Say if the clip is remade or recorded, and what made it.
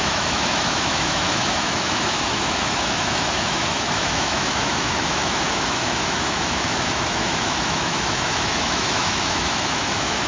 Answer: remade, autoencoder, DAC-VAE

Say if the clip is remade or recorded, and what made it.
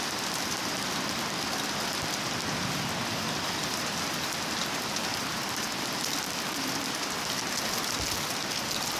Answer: recorded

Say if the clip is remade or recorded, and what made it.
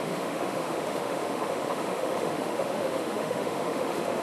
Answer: remade, autoencoder, DAC-VAE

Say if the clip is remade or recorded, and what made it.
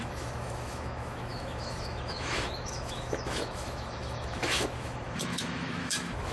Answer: remade, autoencoder, DAC-VAE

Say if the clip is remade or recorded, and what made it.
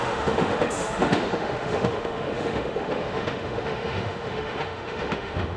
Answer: remade, autoencoder, DAC-VAE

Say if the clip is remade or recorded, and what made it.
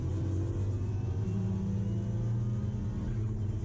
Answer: recorded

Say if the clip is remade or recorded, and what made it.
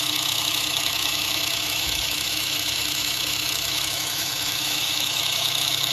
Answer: remade, autoencoder, DAC-VAE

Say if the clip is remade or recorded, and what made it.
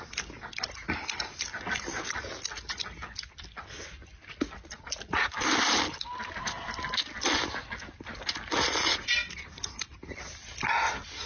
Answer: recorded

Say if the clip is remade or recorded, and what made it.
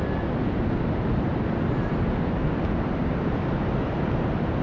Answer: recorded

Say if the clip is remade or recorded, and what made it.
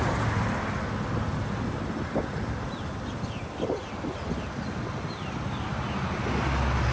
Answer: recorded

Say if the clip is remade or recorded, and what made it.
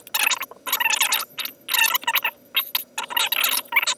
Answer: recorded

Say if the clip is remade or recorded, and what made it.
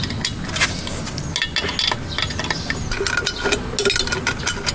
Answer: recorded